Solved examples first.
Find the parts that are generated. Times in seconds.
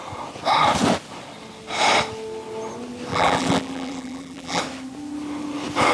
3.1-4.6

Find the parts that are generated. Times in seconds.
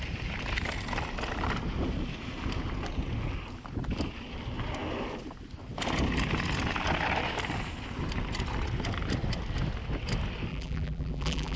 10.5-11.6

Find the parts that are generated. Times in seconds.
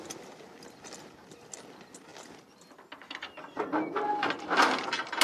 none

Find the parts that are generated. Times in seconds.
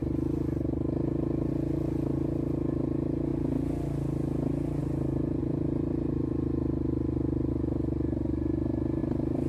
5.4-7.5; 9.0-9.5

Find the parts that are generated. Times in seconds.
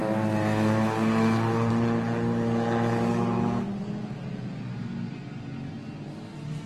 none